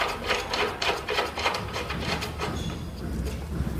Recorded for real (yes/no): yes